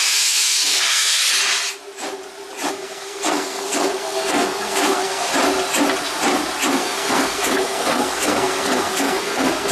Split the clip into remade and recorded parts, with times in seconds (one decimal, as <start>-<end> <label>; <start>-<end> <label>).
0.0-1.2 remade; 1.2-2.7 recorded; 2.7-5.3 remade; 5.3-6.7 recorded; 6.7-9.7 remade